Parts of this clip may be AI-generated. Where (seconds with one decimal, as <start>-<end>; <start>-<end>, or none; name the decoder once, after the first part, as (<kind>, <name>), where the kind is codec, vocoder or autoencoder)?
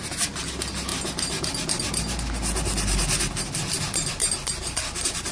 none